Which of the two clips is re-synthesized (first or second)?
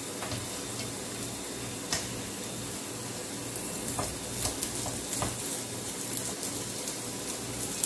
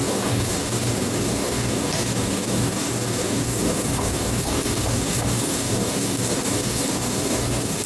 second